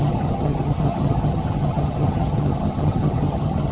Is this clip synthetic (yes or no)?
yes